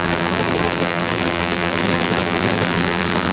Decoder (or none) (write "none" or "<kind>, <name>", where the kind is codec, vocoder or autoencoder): vocoder, BigVGAN v2